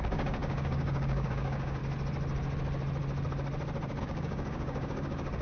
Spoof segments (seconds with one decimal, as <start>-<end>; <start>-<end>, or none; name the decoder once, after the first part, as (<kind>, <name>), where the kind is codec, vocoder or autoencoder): 0.0-1.8 (codec, DAC); 4.0-5.4